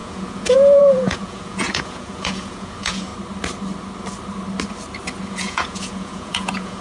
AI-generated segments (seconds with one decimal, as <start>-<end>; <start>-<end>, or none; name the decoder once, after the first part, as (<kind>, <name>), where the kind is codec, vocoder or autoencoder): 0.0-3.1 (vocoder, Vocos); 5.3-6.8